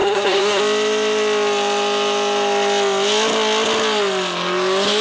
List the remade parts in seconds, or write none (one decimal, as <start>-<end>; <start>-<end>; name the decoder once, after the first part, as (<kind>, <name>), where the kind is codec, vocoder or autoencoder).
0.0-0.6 (codec, SNAC)